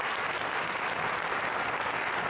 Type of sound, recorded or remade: recorded